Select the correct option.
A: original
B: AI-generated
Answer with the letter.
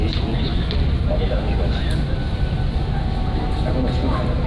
A